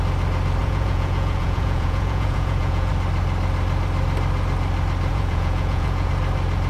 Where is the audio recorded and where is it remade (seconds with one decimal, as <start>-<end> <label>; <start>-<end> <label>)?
0.0-0.6 recorded; 0.6-2.9 remade; 2.9-5.1 recorded; 5.1-6.1 remade; 6.1-6.7 recorded